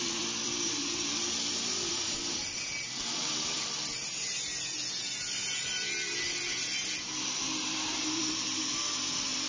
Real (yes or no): no